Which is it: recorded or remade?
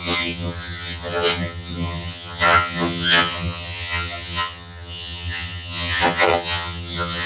remade